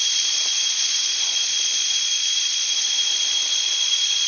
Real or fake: fake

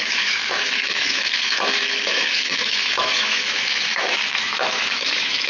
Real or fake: fake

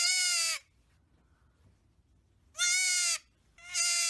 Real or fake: real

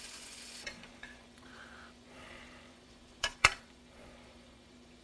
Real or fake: fake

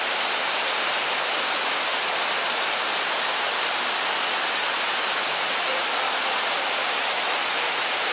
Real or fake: real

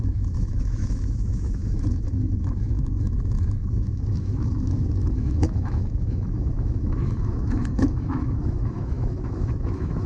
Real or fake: fake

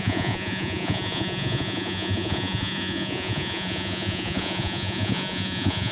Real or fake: fake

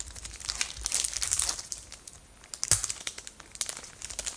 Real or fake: real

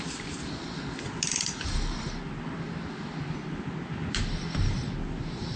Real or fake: real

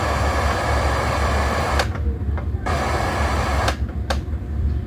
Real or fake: fake